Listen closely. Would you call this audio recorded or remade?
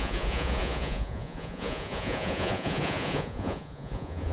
remade